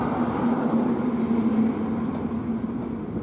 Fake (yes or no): no